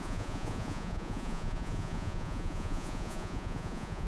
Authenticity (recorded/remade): remade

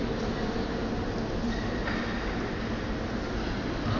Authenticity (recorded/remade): recorded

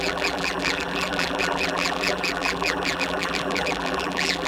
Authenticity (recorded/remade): remade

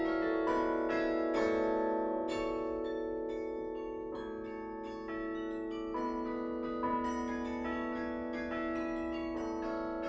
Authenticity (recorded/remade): recorded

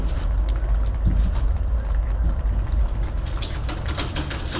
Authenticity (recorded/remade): remade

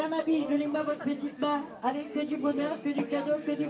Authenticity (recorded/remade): remade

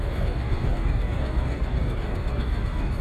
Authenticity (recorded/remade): remade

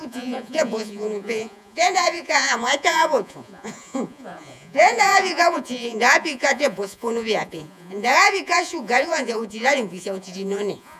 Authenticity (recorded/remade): remade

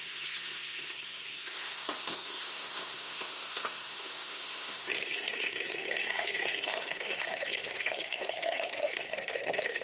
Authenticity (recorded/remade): remade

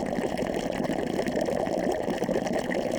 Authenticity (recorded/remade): recorded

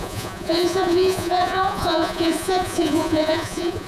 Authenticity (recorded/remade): remade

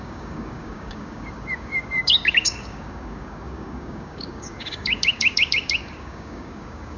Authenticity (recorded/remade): remade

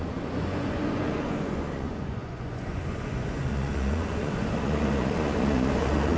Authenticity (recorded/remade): remade